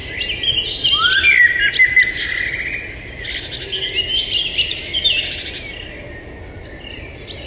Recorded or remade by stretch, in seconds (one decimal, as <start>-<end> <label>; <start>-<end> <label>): 0.0-7.5 recorded